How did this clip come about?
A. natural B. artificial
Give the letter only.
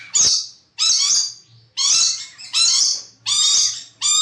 A